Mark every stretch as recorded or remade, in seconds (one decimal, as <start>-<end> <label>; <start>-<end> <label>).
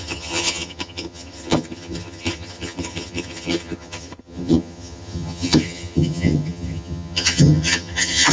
0.0-8.3 remade